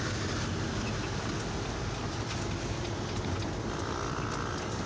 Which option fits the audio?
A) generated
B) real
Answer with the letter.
B